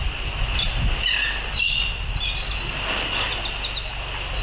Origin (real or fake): real